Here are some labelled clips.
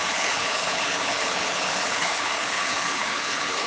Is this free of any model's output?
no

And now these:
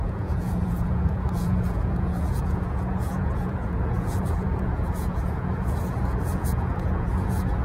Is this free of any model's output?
no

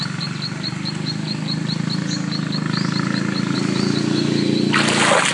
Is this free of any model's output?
yes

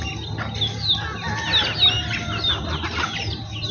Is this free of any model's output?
yes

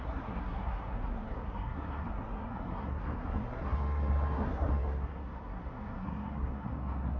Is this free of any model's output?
no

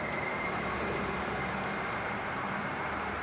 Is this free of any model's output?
no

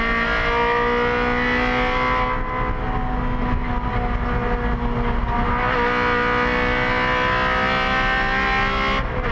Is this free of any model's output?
yes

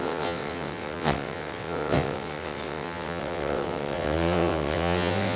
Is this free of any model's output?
no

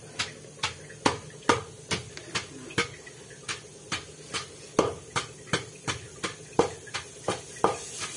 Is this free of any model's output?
yes